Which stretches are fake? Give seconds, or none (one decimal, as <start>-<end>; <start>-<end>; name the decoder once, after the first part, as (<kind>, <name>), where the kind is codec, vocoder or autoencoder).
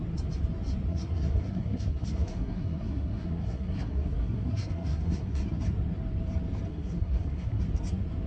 0.9-5.6 (codec, SNAC); 6.7-7.6